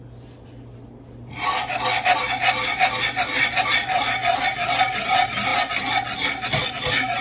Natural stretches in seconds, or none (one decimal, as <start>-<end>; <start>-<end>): 0.0-7.2